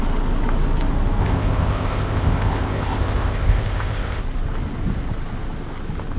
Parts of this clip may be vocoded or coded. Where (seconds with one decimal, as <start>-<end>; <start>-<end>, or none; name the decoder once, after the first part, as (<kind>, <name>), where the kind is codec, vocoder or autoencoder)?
1.2-4.2 (codec, ZipCodec)